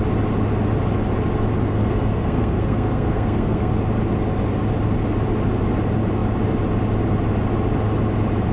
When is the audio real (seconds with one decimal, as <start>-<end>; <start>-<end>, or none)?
0.0-1.7; 3.7-8.5